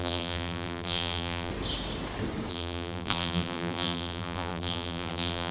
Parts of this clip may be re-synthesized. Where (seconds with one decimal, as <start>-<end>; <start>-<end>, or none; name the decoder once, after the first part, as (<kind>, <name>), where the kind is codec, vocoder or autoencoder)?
0.0-1.5 (vocoder, BigVGAN v2); 2.5-5.5